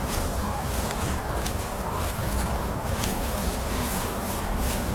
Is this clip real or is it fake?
fake